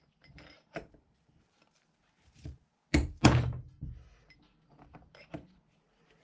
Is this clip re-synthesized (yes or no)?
no